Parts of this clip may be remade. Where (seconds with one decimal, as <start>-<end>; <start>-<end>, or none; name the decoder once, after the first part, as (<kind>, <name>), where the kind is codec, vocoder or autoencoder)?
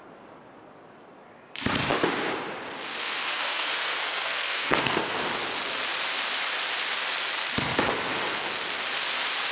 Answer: 3.0-5.2 (codec, SNAC)